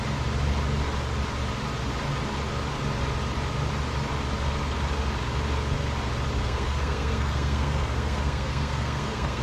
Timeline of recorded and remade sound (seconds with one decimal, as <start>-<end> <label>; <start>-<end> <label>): 0.0-6.4 recorded; 6.4-9.4 remade